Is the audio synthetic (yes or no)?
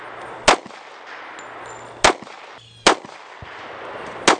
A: no